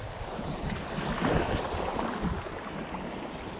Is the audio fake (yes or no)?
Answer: no